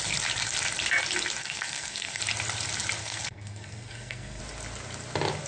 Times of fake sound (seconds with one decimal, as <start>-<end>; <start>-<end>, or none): 1.4-2.2; 3.0-4.4